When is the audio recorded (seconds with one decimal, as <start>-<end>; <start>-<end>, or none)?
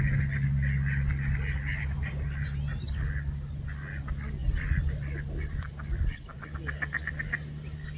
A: 0.0-4.4; 6.9-8.0